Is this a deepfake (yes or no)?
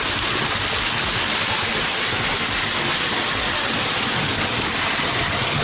no